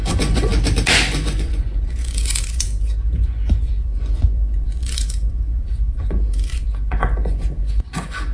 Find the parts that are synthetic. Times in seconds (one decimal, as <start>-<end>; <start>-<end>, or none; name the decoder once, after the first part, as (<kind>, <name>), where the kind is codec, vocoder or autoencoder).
0.0-0.5 (vocoder, Vocos); 1.1-8.3